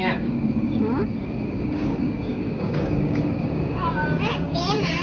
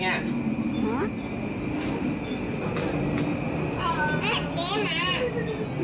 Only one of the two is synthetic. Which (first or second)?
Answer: first